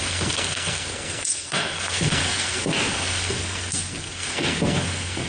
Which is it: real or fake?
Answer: fake